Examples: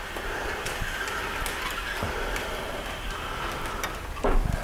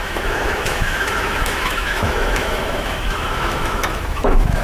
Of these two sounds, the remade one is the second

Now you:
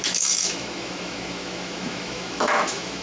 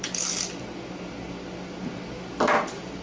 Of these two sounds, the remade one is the first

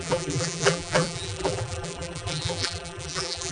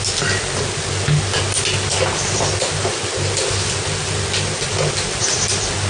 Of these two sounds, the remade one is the first